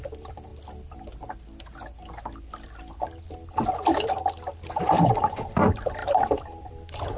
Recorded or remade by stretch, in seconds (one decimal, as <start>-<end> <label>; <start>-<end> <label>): 0.0-0.5 remade; 0.5-4.8 recorded; 4.8-6.0 remade; 6.0-6.7 recorded; 6.7-7.2 remade